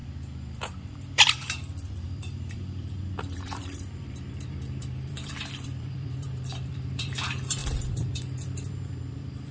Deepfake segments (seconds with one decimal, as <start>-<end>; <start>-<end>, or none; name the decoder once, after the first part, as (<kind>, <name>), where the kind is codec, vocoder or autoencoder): 0.0-9.5 (vocoder, BigVGAN v2)